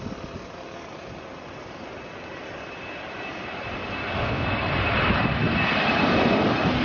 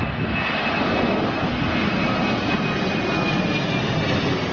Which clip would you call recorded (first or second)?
second